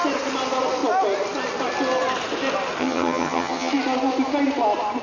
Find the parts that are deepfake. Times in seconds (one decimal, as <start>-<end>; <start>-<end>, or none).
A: 2.8-3.7